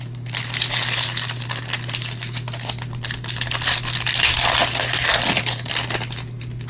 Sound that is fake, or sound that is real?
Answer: real